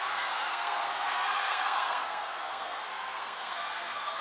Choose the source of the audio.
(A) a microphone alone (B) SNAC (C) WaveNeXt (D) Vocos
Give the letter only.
B